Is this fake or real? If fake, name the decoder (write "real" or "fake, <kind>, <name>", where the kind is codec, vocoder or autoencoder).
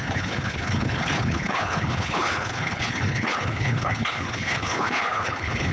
fake, codec, HILCodec